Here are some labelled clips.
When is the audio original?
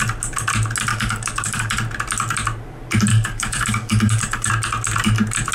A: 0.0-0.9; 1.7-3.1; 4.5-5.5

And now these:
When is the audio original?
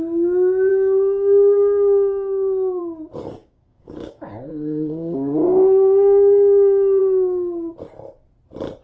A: 0.0-0.7; 2.8-3.4; 7.0-8.8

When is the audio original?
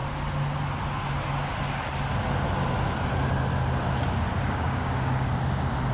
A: 0.0-4.4; 5.3-5.9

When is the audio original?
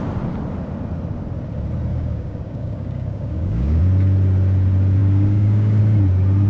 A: 0.0-1.9; 3.8-5.0; 5.8-6.5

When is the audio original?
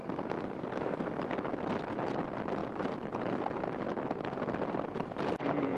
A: 1.2-5.8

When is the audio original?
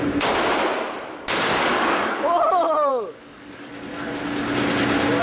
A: 0.0-1.5; 2.2-2.9; 3.7-5.2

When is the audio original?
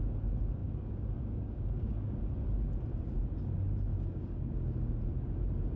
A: 0.0-0.6; 2.2-3.9; 5.0-5.8